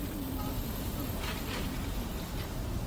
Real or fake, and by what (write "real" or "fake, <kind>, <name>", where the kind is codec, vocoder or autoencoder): real